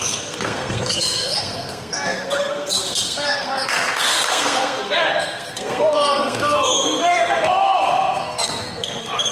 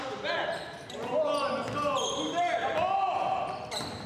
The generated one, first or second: first